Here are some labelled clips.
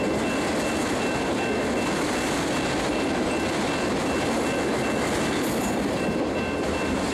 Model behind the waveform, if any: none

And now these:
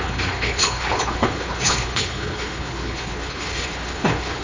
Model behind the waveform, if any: codec, HILCodec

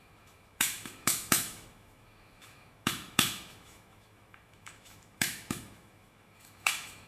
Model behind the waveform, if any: autoencoder, DAC-VAE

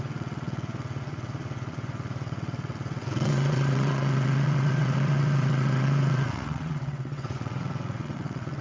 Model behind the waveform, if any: vocoder, WaveNeXt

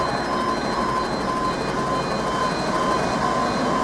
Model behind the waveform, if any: none